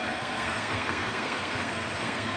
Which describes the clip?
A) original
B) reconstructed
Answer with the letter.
B